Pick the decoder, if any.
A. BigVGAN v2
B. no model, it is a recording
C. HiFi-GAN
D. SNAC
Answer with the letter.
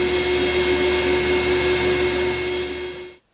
B